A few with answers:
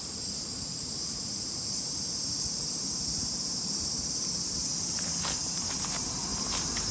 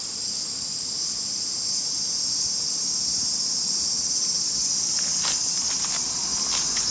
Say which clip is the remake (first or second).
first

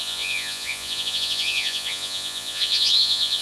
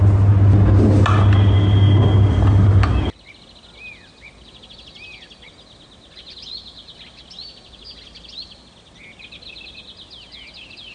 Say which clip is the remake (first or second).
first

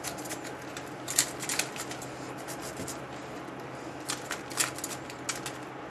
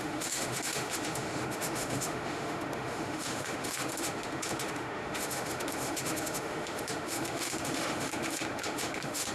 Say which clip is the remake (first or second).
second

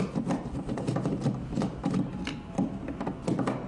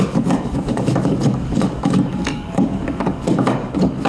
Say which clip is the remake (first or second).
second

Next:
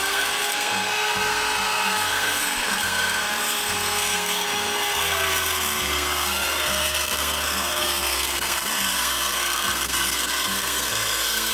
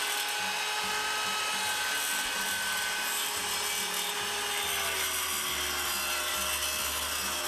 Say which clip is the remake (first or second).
first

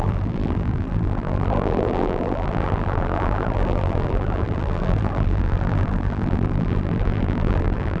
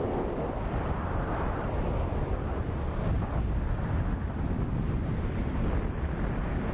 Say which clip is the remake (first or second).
first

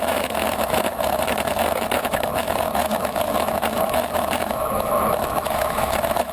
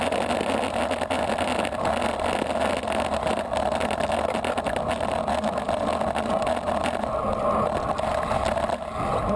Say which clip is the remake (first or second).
first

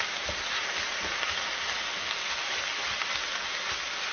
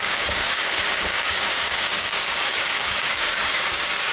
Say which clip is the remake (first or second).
second